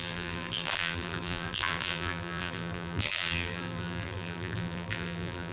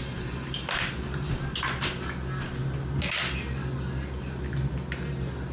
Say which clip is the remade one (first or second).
first